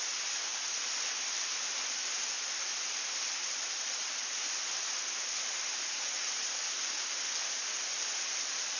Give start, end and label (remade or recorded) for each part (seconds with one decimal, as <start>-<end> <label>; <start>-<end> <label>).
0.0-8.8 recorded